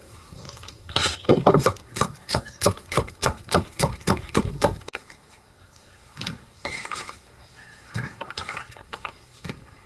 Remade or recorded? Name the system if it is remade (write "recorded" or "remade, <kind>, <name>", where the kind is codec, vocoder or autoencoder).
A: remade, codec, SNAC